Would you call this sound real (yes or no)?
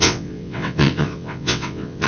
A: no